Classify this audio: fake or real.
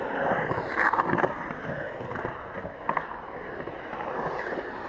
real